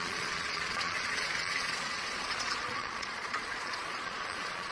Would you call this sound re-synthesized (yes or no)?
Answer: yes